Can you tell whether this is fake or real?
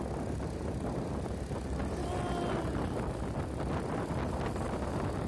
real